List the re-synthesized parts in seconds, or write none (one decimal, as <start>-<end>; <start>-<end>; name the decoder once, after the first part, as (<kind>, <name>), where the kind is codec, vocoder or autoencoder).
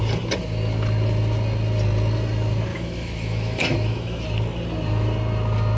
2.7-4.2 (autoencoder, DAC-VAE)